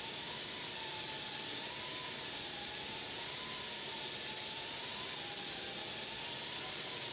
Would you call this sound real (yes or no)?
no